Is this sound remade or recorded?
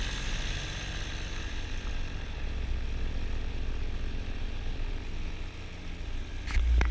recorded